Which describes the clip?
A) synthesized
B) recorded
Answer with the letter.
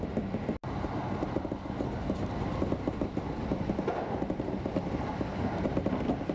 B